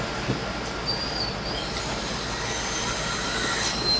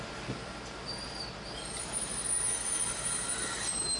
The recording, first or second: first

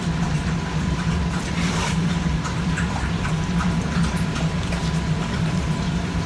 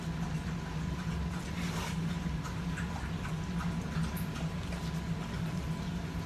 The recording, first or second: second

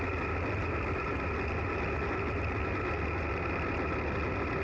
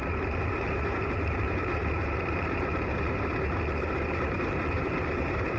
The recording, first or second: first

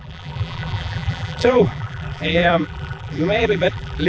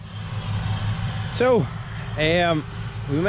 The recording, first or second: second